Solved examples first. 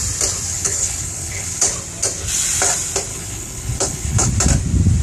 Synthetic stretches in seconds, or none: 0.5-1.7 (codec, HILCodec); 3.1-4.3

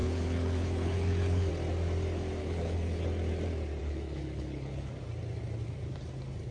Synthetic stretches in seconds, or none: 0.0-1.5 (codec, HILCodec); 2.4-3.0; 3.8-4.9

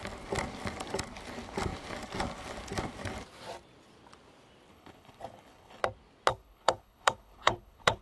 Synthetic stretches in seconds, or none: 4.7-5.8 (codec, HILCodec); 6.3-8.0

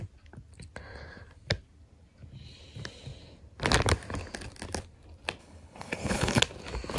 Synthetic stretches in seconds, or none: 5.4-6.4 (codec, HILCodec)

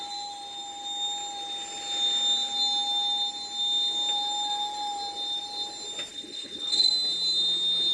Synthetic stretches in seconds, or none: 6.1-6.9 (codec, HILCodec)

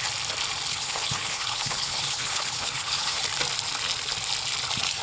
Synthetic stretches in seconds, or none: 0.7-3.2 (codec, HILCodec)